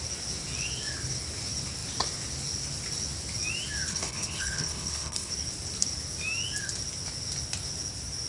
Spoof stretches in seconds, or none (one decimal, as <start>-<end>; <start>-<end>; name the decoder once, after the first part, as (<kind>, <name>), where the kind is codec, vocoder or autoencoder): 3.9-5.3 (codec, HILCodec)